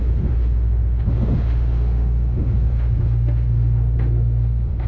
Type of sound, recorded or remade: remade